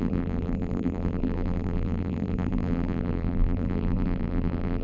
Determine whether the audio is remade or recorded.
remade